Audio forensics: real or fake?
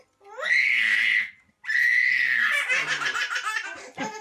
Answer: real